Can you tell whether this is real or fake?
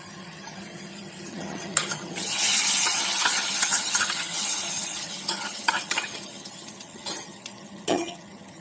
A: fake